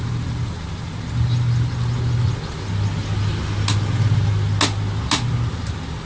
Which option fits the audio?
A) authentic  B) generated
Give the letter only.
A